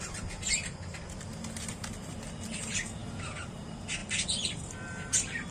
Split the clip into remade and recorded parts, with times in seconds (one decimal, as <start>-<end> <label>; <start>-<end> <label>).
0.0-4.0 recorded; 4.0-5.5 remade